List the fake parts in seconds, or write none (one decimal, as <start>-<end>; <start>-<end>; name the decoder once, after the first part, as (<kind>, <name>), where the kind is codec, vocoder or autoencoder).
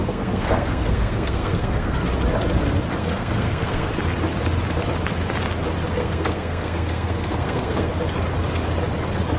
0.0-2.0 (codec, SNAC); 3.0-3.9; 6.0-7.9